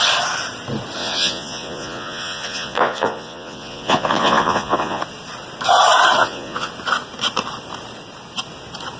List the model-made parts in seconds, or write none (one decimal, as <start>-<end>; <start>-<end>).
1.0-5.0; 6.2-6.7